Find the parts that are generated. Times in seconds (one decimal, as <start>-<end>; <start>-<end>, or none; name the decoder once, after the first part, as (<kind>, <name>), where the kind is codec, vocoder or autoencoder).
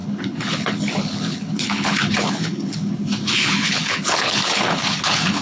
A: 0.0-5.4 (codec, HILCodec)